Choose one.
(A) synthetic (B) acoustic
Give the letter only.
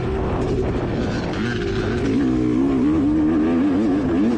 B